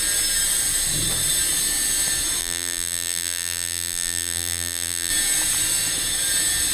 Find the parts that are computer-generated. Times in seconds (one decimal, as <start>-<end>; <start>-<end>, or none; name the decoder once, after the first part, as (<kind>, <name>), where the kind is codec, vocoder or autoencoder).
2.4-5.1 (vocoder, BigVGAN v2)